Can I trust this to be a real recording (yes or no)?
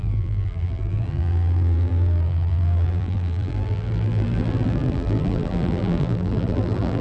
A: no